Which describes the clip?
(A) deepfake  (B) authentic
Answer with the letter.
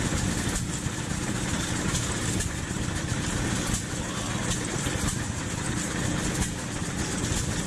B